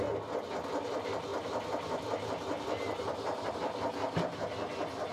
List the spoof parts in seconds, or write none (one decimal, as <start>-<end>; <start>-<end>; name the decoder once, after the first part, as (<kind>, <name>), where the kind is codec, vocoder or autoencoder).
1.3-3.5 (vocoder, BigVGAN v2)